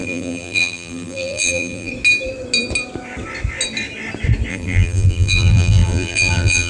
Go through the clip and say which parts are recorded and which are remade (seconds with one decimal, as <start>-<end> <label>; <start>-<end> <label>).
0.0-1.9 remade; 1.9-4.5 recorded; 4.5-6.7 remade